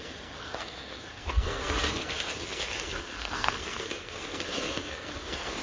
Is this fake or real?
fake